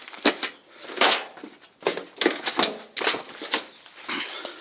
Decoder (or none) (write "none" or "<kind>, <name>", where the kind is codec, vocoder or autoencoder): none